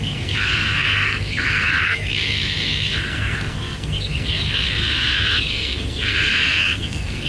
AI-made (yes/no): yes